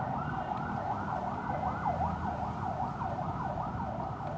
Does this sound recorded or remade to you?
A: remade